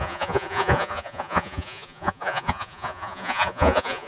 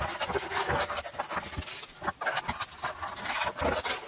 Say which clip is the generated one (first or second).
first